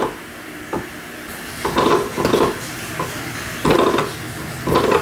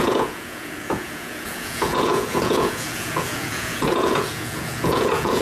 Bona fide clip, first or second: first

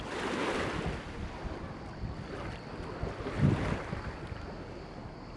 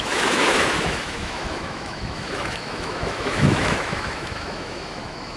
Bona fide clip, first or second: first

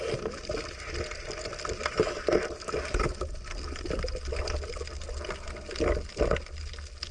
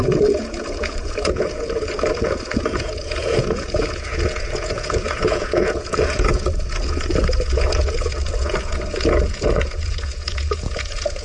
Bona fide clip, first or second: first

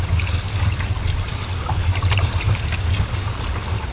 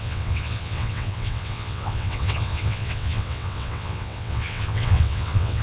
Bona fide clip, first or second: first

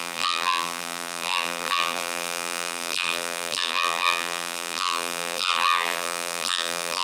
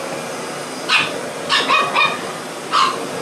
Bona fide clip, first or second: second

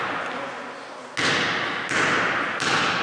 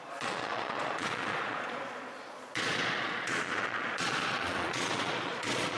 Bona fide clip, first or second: first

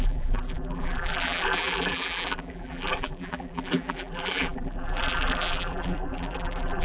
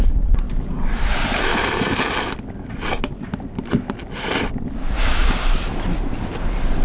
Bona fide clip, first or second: second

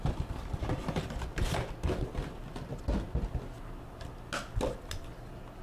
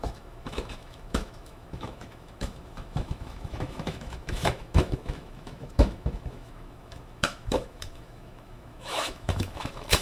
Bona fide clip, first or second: first